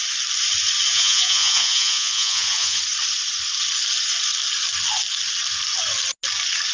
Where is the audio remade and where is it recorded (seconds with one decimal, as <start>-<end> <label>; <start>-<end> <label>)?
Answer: 0.0-0.9 recorded; 0.9-2.8 remade; 2.8-6.7 recorded